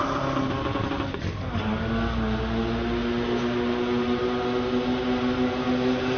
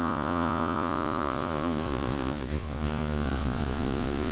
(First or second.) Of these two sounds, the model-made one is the second